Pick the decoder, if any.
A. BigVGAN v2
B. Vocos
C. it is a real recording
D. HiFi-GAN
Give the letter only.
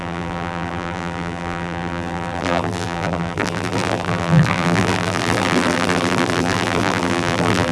A